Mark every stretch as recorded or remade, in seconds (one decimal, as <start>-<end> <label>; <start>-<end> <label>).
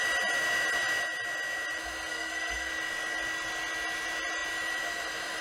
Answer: 0.0-2.1 recorded; 2.1-2.7 remade; 2.7-5.4 recorded